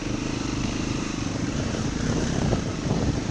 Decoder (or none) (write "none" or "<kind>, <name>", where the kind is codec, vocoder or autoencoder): vocoder, BigVGAN v2